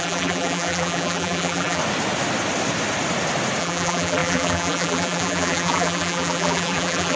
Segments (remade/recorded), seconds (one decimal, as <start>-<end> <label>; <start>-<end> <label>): 0.0-1.8 remade; 1.8-3.6 recorded; 3.6-7.2 remade